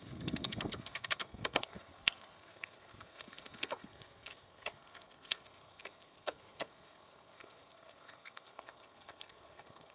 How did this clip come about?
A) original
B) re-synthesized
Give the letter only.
B